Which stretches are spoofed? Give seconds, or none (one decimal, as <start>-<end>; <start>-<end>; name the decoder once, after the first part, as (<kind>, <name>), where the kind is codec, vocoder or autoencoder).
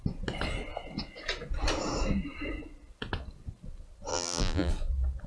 4.1-4.7 (vocoder, BigVGAN v2)